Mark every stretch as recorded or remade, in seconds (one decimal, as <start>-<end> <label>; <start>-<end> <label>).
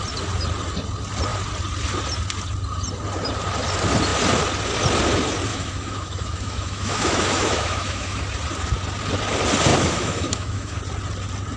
0.0-5.5 recorded; 5.5-8.2 remade; 8.2-9.7 recorded; 9.7-10.8 remade; 10.8-11.6 recorded